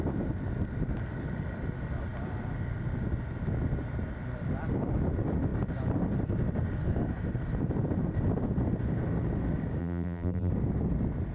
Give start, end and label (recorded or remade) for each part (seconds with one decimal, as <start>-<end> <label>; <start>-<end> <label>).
0.0-9.8 recorded; 9.8-10.5 remade; 10.5-11.3 recorded